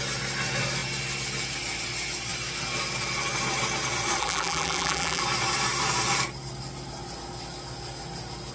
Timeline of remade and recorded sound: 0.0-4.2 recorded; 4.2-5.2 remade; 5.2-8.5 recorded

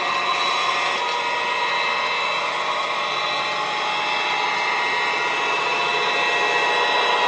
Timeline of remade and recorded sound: 0.0-7.3 recorded

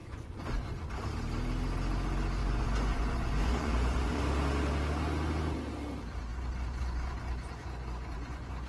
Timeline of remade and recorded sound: 0.0-0.9 remade; 0.9-2.4 recorded; 2.4-4.2 remade; 4.2-6.3 recorded; 6.3-8.7 remade

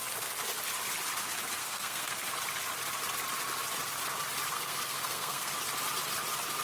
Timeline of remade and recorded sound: 0.0-1.6 recorded; 1.6-2.3 remade; 2.3-4.5 recorded; 4.5-5.5 remade; 5.5-6.6 recorded